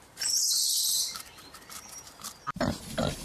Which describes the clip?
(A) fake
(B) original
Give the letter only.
A